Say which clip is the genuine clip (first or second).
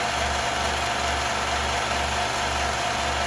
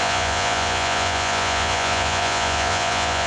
first